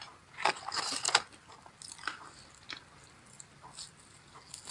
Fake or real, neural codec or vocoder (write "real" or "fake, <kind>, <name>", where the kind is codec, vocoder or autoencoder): real